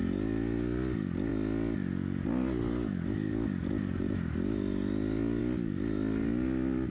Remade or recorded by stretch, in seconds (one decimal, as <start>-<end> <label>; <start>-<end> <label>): 0.0-6.9 recorded